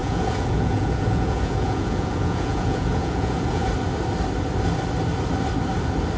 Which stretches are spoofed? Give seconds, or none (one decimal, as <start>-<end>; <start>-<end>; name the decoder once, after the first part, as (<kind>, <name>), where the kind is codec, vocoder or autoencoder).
0.0-3.7 (vocoder, Vocos)